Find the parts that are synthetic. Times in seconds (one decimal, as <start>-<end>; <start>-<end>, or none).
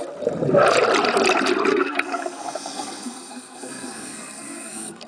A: 1.7-5.1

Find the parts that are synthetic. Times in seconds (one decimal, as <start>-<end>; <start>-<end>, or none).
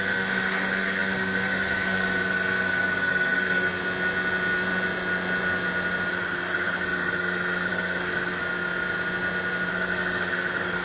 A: 0.0-3.8; 6.1-8.4; 9.7-10.8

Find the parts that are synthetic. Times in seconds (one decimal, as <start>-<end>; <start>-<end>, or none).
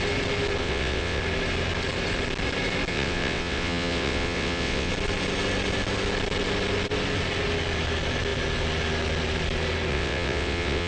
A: 0.6-1.2; 2.9-4.9; 9.9-10.9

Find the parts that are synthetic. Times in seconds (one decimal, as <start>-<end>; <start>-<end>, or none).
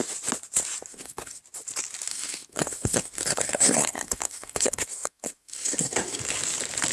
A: 0.9-1.4; 2.1-6.2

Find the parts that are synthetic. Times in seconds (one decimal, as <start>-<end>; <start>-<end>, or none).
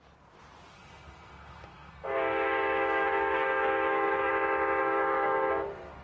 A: 0.7-4.3; 4.8-5.5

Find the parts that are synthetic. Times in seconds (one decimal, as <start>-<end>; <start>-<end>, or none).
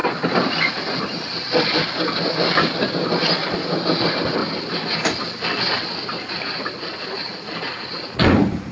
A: none